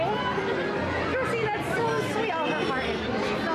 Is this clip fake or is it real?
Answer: real